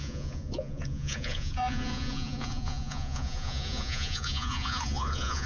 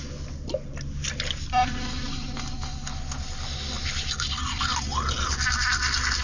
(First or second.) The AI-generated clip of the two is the first